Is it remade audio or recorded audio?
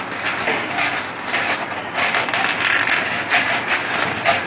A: recorded